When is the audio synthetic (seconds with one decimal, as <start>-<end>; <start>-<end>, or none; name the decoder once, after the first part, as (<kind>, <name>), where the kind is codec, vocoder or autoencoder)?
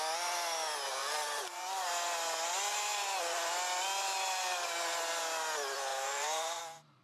1.0-1.9 (vocoder, BigVGAN v2); 5.9-6.6